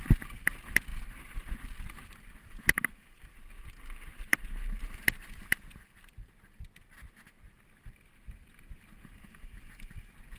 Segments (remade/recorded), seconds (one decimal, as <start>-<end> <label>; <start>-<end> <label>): 0.0-10.4 recorded